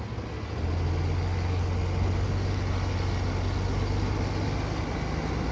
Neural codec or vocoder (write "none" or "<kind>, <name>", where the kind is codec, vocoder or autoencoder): none